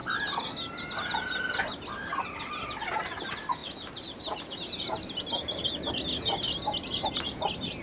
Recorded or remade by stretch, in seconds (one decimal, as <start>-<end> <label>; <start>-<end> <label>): 0.0-7.8 recorded